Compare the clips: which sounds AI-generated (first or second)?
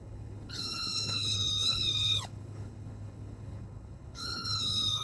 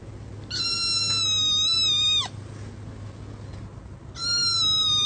first